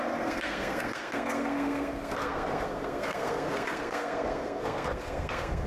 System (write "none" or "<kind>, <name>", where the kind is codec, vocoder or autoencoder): codec, SNAC